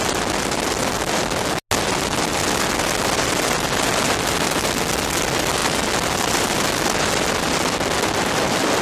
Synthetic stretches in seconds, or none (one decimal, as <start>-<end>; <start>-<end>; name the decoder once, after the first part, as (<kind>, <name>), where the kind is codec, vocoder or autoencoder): none